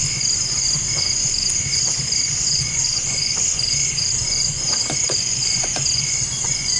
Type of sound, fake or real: fake